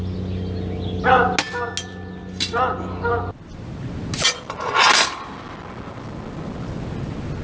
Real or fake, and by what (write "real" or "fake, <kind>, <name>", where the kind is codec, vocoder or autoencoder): real